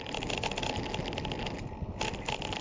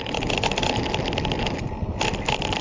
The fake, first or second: second